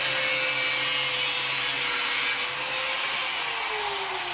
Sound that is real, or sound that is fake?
real